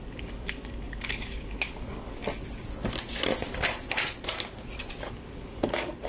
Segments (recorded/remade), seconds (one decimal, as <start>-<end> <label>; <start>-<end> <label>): 0.0-2.2 remade; 2.2-5.1 recorded; 5.1-6.1 remade